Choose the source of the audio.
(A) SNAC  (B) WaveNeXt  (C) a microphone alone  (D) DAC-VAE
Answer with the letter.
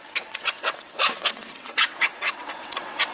B